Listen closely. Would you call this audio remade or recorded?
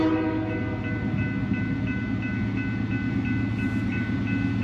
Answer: recorded